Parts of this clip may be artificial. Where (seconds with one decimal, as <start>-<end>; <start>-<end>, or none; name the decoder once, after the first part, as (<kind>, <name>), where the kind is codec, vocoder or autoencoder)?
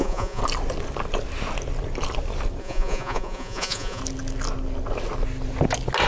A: 0.0-0.4 (vocoder, Vocos); 2.6-4.0